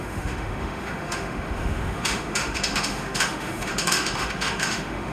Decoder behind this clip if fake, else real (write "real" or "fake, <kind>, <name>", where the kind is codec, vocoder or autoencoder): fake, autoencoder, DAC-VAE